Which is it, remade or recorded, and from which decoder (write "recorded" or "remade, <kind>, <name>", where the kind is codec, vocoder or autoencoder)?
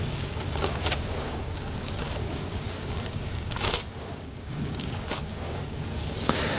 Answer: remade, codec, DAC